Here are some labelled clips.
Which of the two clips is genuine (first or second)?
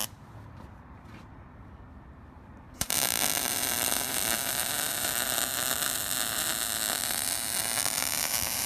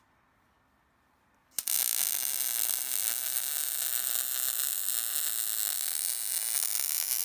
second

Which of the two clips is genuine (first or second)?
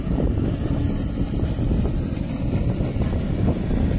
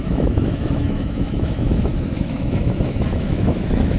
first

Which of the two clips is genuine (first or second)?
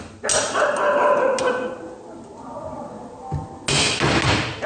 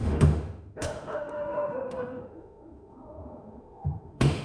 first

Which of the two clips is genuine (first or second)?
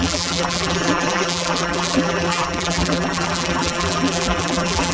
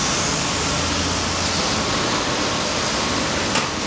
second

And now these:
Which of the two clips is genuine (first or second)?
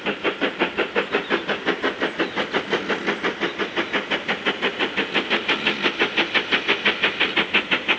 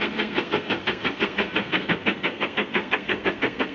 first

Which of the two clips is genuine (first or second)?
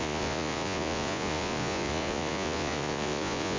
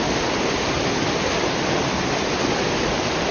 second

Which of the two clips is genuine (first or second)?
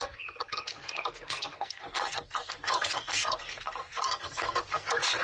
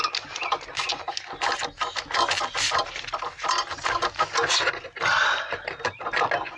second